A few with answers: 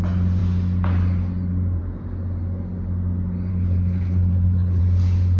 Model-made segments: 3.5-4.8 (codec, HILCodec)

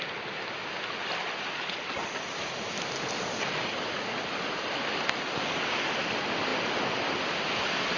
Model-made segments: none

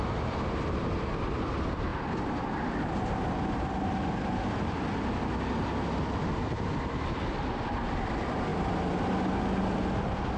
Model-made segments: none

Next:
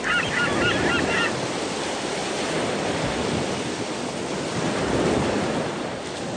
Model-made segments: none

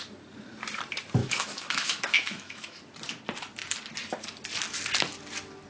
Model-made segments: 1.2-2.8 (autoencoder, DAC-VAE)